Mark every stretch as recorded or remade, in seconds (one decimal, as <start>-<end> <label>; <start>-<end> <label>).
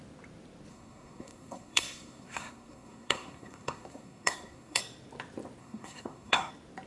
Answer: 0.0-0.7 recorded; 0.7-4.8 remade; 4.8-5.6 recorded; 5.6-6.5 remade; 6.5-6.9 recorded